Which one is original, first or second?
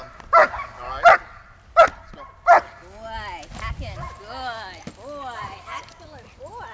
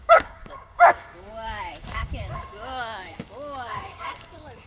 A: first